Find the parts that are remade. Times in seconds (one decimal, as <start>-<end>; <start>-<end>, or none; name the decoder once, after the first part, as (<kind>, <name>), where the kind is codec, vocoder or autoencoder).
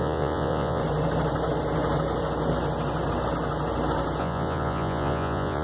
0.0-0.8 (vocoder, Vocos); 4.2-5.6